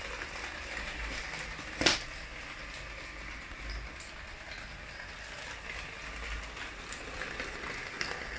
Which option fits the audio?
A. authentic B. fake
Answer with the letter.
A